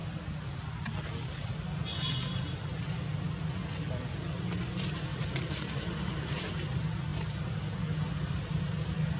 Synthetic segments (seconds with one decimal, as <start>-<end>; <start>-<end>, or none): 5.1-6.1